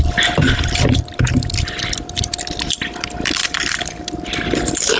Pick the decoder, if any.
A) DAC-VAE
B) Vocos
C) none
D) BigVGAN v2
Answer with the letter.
D